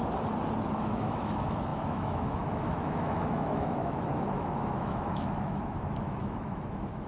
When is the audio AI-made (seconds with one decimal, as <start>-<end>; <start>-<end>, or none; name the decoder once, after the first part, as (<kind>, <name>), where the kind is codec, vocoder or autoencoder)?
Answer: 0.8-7.1 (autoencoder, DAC-VAE)